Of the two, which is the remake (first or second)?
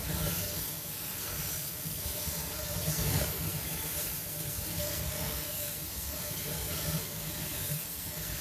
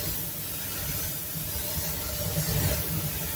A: first